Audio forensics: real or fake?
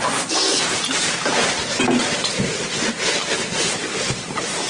real